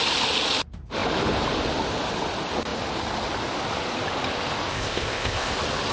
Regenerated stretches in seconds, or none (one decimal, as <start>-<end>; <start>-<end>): 4.7-5.5